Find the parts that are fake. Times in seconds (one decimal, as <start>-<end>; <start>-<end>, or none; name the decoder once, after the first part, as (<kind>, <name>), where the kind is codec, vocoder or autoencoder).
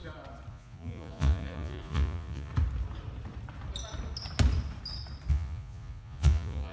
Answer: 0.5-2.5 (vocoder, Vocos); 5.3-6.7